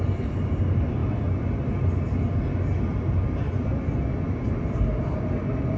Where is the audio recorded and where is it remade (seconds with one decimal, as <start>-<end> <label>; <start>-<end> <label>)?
0.0-5.8 recorded